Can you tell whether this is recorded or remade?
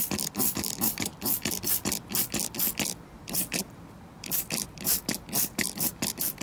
recorded